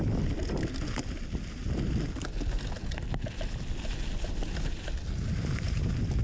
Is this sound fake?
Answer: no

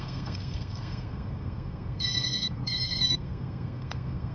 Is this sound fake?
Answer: yes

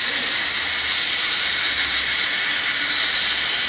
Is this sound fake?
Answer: yes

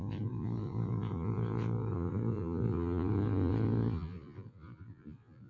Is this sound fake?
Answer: yes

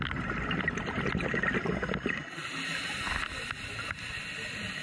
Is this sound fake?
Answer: no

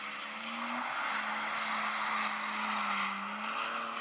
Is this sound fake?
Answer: no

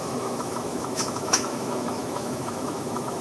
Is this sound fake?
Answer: yes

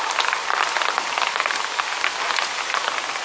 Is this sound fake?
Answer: no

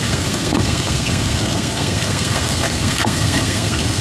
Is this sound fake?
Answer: yes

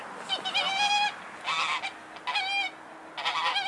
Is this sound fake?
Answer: no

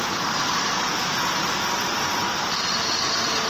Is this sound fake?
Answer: no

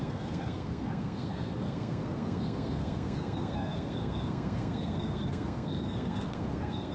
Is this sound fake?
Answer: yes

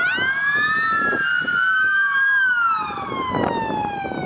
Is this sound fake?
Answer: no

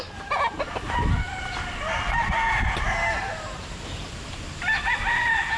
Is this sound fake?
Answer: no